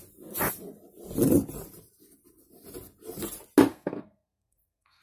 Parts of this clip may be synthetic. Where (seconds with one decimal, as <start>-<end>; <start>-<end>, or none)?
3.7-5.0